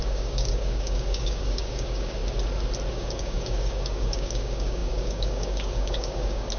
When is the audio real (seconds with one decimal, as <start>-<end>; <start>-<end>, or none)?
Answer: 2.2-2.9